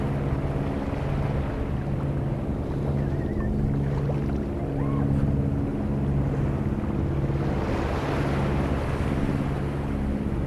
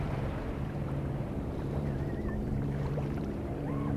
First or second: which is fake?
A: second